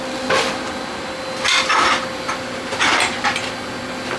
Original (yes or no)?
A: yes